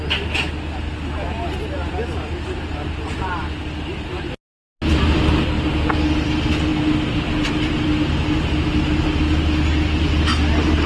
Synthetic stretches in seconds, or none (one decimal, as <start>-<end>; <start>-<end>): none